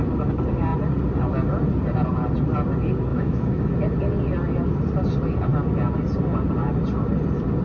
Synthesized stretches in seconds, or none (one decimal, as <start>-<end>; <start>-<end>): 3.1-3.7